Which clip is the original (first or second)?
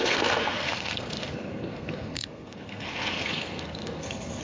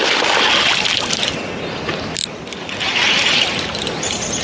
second